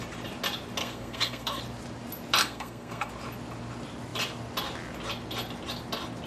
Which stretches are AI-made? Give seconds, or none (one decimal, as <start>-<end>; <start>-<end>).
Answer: 0.8-1.6; 2.4-3.1